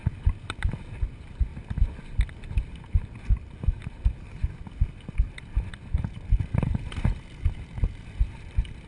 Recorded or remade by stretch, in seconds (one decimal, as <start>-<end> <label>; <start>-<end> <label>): 0.0-8.9 recorded